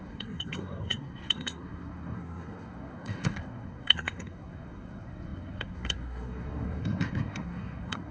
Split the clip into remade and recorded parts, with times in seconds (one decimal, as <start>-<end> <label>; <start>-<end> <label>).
0.0-8.1 remade